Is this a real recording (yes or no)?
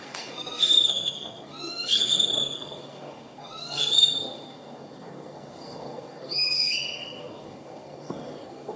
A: no